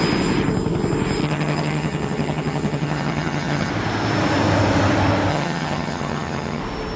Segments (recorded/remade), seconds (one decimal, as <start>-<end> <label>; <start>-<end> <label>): 0.0-1.2 recorded; 1.2-3.7 remade; 3.7-5.3 recorded; 5.3-6.6 remade; 6.6-7.0 recorded